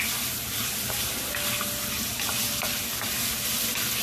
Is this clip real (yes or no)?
yes